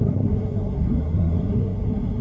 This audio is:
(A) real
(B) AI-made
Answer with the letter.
B